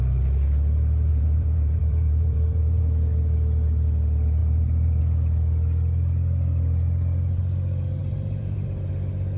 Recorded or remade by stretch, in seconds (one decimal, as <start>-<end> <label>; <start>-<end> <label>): 0.0-1.1 recorded; 1.1-2.8 remade; 2.8-4.4 recorded; 4.4-5.0 remade; 5.0-8.0 recorded; 8.0-8.9 remade; 8.9-9.4 recorded